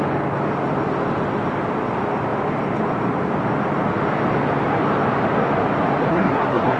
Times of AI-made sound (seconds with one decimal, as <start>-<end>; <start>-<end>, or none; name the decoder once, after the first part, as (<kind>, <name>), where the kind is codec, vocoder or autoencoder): 6.1-6.8 (codec, SNAC)